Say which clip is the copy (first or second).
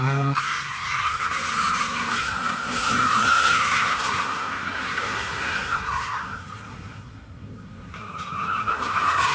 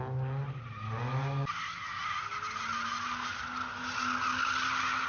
first